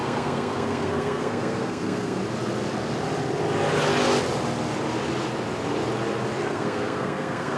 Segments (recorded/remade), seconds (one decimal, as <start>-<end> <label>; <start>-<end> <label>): 0.0-2.2 remade; 2.2-6.4 recorded; 6.4-7.6 remade